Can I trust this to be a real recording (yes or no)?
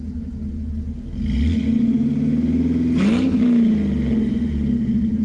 yes